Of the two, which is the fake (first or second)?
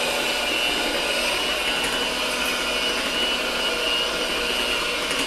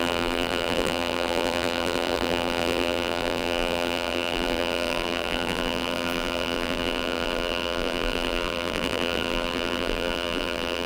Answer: second